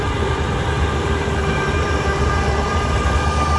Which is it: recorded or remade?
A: remade